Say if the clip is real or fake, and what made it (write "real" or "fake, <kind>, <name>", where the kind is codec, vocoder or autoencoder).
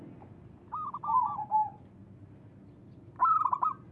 real